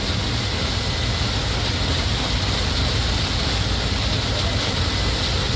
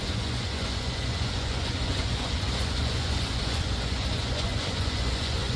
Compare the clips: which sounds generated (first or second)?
second